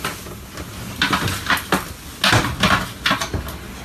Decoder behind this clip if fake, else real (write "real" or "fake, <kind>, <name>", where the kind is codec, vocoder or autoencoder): real